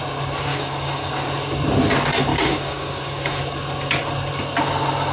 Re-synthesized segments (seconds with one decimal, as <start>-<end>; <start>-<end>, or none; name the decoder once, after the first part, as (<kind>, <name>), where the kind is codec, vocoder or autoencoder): 0.5-1.1 (codec, DAC); 2.3-3.4